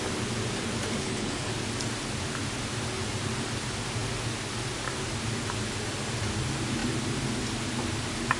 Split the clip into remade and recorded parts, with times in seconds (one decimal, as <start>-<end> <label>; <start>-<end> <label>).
0.0-1.0 recorded; 1.0-1.5 remade; 1.5-8.4 recorded